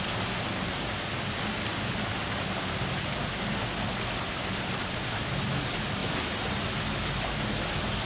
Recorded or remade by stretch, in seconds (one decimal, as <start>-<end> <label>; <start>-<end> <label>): 0.0-8.1 recorded